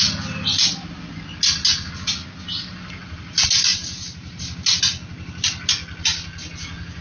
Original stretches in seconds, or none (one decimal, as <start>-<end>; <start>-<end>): 0.0-3.7; 4.4-7.0